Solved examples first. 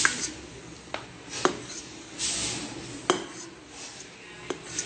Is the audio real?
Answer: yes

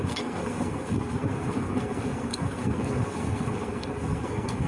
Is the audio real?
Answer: no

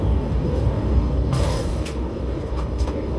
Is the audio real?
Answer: no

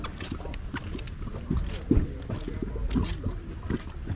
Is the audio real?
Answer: yes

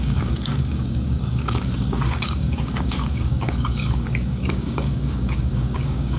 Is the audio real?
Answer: no